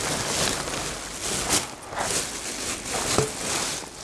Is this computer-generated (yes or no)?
no